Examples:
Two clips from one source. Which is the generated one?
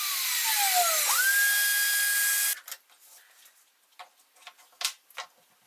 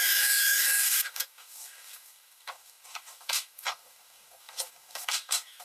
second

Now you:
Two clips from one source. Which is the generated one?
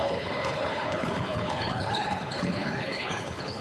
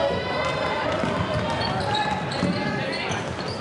first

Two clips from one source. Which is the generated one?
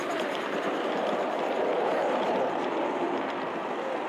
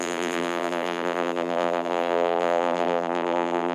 second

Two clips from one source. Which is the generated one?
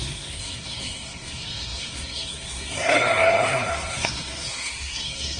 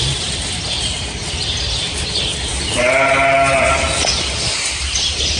first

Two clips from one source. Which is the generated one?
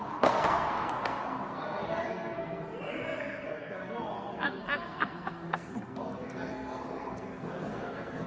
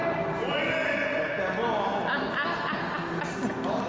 first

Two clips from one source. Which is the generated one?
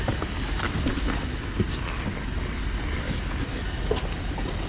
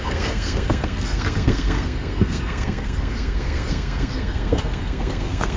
second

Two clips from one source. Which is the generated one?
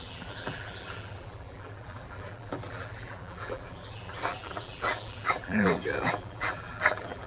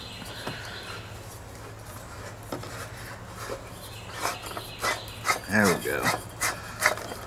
first